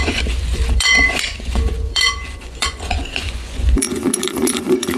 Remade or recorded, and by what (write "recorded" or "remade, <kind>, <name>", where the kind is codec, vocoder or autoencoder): remade, vocoder, Vocos